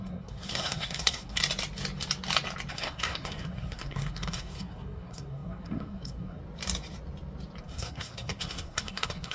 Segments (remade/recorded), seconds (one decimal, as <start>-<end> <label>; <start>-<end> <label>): 0.0-1.4 remade; 1.4-2.7 recorded; 2.7-6.4 remade; 6.4-7.6 recorded; 7.6-9.3 remade